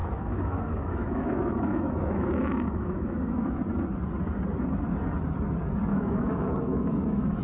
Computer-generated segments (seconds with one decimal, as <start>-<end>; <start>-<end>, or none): 0.0-3.6; 5.9-7.4